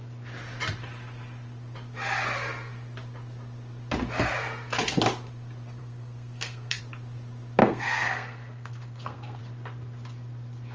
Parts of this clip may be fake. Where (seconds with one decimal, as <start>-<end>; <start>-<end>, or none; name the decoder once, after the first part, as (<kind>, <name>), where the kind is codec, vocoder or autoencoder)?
5.8-6.8 (codec, SNAC); 7.6-9.4